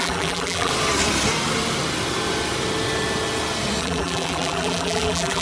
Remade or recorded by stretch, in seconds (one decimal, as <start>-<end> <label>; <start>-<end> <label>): 0.0-0.7 remade; 0.7-3.8 recorded; 3.8-5.4 remade